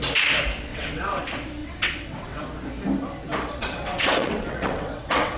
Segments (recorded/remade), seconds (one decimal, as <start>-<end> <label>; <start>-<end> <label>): 0.0-0.7 recorded; 0.7-1.2 remade; 1.2-1.6 recorded; 1.6-2.4 remade; 2.4-3.6 recorded; 3.6-5.4 remade